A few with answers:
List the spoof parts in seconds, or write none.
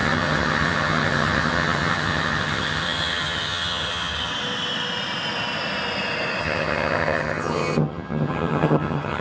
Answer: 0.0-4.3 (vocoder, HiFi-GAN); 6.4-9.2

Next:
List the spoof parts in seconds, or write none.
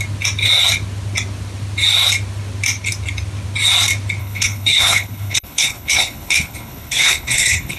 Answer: 4.2-7.8 (codec, HILCodec)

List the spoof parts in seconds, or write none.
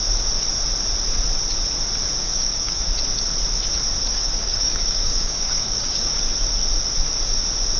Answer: 2.2-2.9 (codec, DAC); 4.1-6.2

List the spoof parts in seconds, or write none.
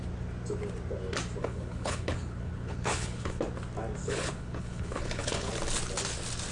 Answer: 1.4-3.4 (codec, HILCodec); 4.0-5.5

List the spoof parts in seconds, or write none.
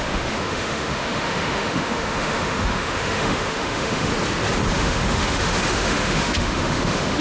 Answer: 0.0-4.1 (autoencoder, DAC-VAE); 4.7-7.2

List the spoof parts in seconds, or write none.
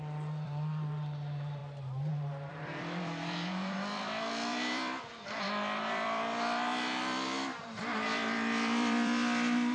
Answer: 0.0-1.6 (vocoder, BigVGAN v2); 2.5-9.7